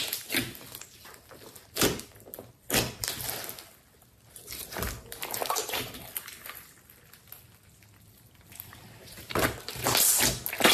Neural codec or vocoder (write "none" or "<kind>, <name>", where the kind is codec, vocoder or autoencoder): none